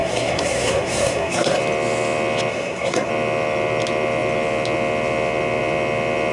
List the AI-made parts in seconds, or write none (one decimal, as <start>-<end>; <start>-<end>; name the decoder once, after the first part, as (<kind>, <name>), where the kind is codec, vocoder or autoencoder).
0.0-1.6 (codec, SNAC); 2.5-3.1

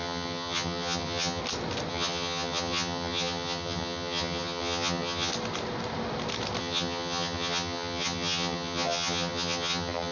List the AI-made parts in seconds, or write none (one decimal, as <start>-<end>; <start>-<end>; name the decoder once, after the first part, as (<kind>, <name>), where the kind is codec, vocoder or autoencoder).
0.0-1.4 (vocoder, HiFi-GAN); 1.9-5.3; 6.6-10.1